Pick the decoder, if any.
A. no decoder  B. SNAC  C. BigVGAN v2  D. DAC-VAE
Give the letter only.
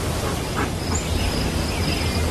A